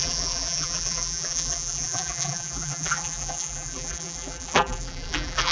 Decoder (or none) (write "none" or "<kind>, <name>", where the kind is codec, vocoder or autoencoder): vocoder, BigVGAN v2